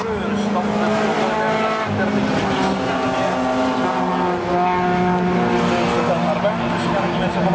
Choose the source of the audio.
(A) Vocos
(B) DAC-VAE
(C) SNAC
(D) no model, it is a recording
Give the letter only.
D